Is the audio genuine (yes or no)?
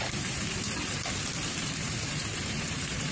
no